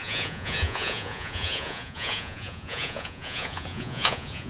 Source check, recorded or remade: remade